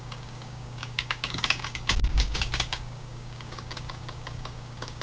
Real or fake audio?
fake